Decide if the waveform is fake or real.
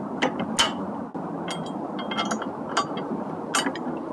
real